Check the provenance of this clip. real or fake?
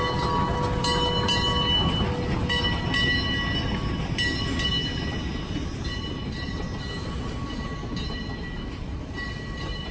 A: real